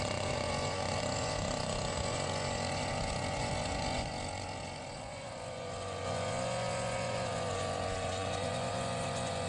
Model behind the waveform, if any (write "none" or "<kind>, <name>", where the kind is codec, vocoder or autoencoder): vocoder, Vocos